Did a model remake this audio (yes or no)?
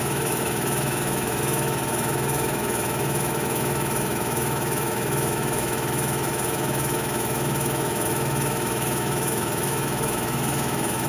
yes